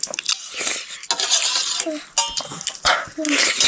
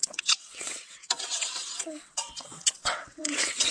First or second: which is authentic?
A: first